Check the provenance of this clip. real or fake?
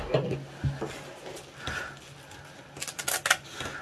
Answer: real